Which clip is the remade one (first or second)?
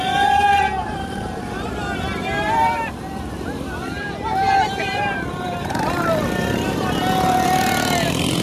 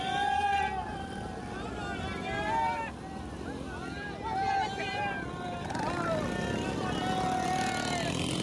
first